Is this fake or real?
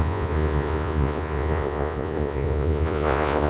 fake